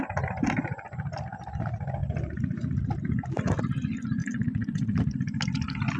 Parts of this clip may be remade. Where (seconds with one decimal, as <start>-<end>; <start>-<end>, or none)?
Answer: 4.2-5.0